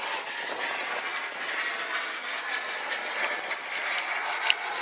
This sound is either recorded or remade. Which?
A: recorded